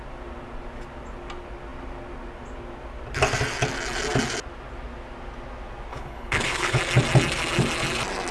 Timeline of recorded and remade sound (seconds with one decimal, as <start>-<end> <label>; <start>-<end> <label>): 0.0-5.9 recorded; 5.9-6.8 remade; 6.8-8.3 recorded